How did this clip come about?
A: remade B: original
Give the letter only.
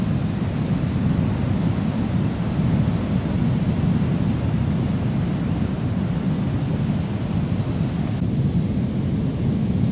B